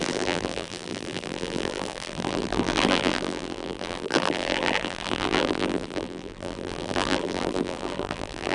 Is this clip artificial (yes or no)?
yes